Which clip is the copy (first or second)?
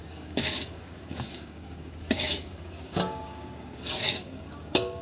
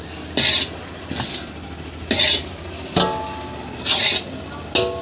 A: first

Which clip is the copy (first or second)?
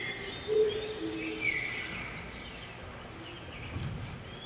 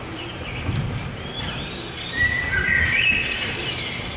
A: second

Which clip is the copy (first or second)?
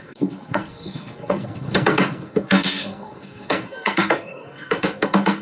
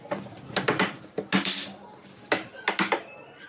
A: first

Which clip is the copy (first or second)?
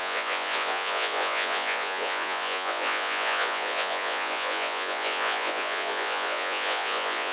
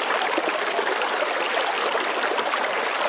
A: first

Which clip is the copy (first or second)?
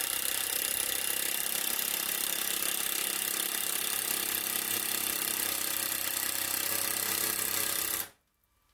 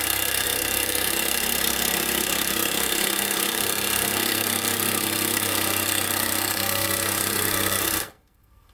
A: second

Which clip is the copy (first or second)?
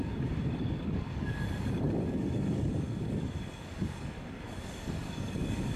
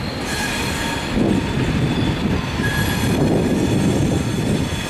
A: first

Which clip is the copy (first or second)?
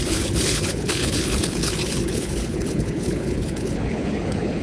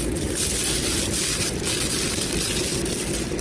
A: first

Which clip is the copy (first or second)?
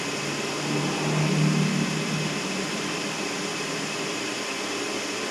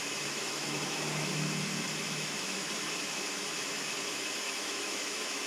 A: second